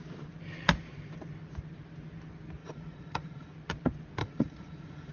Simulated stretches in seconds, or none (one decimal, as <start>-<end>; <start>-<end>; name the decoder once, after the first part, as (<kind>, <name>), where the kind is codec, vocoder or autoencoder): 2.6-3.5 (vocoder, Vocos); 4.2-5.1